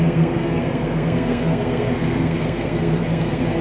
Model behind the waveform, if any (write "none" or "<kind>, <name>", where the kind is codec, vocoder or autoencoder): codec, SNAC